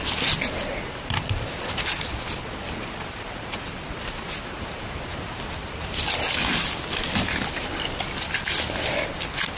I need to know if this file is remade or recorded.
recorded